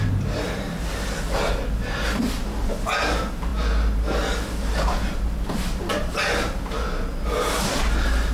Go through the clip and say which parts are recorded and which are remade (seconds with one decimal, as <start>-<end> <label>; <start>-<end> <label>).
0.0-8.3 recorded